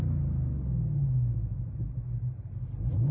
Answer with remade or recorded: recorded